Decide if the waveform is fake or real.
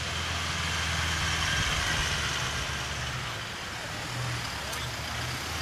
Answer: real